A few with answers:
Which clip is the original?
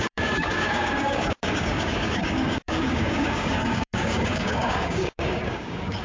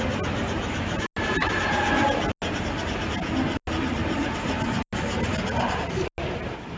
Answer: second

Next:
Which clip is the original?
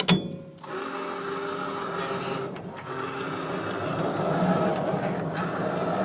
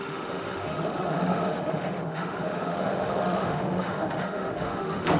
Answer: first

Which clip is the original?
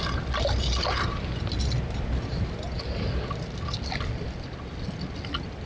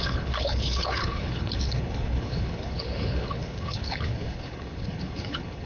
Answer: first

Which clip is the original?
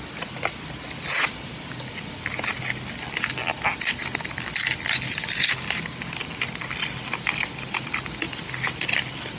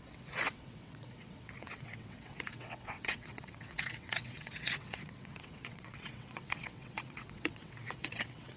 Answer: first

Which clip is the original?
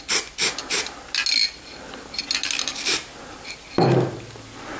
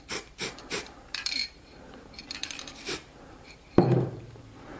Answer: first